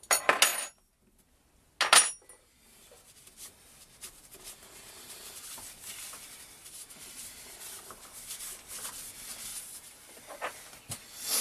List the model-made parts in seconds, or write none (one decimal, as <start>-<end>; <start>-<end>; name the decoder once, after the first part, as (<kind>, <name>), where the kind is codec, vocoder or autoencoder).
6.6-7.2 (vocoder, BigVGAN v2); 9.5-10.2